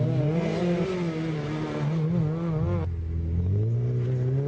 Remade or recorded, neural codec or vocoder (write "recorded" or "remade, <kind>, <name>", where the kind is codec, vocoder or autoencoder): recorded